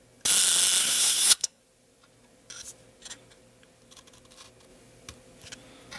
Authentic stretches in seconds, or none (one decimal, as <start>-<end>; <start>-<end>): 0.0-0.8; 1.6-6.0